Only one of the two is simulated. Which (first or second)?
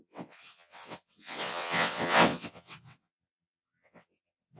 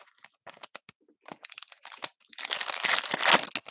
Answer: first